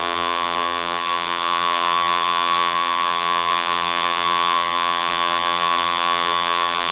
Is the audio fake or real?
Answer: fake